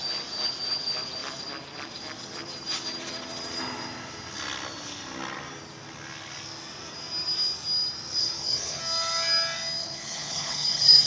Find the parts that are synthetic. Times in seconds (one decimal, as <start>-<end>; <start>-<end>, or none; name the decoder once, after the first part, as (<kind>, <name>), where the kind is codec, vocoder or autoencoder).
8.2-8.8 (codec, HILCodec); 9.8-11.1